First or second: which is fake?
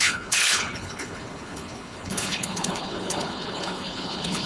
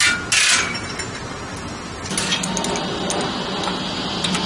first